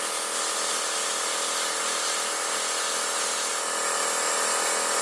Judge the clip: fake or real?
real